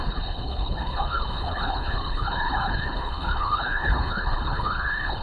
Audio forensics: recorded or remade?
remade